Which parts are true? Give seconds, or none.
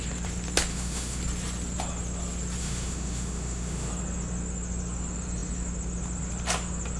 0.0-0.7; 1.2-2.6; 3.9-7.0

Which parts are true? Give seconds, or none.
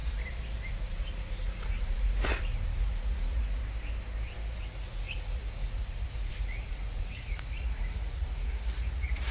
0.0-0.7; 3.6-4.6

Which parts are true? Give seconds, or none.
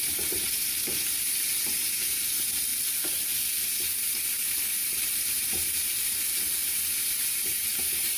2.7-5.2